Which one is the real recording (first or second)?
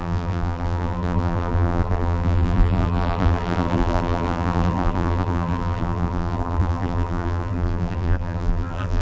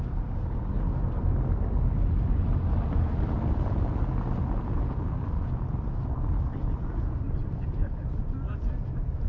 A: second